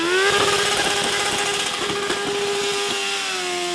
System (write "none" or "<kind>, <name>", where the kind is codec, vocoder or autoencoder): none